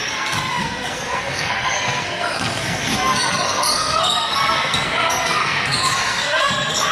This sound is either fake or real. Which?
fake